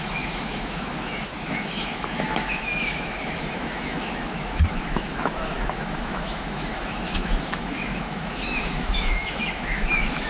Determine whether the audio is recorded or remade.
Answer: remade